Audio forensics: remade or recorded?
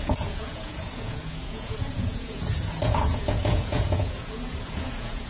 remade